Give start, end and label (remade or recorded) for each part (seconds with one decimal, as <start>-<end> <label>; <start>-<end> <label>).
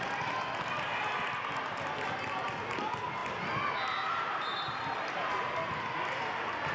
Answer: 0.0-6.7 recorded